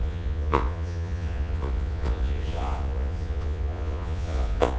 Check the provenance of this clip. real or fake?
fake